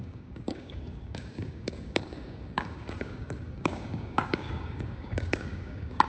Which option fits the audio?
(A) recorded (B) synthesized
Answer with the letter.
B